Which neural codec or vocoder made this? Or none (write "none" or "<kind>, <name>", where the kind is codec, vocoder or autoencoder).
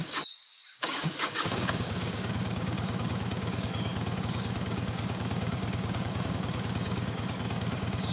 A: codec, DAC